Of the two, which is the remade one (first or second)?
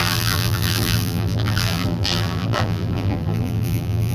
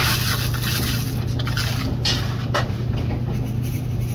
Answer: first